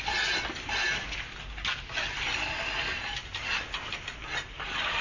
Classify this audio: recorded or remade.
recorded